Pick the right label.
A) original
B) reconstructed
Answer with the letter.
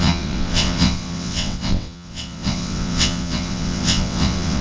B